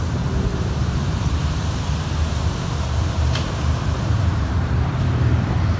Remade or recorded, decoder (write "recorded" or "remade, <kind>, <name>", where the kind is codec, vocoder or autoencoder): remade, vocoder, BigVGAN v2